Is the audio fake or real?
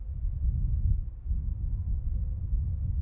real